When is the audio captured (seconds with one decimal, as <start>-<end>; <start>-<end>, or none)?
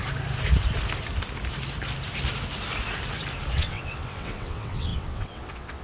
0.0-3.5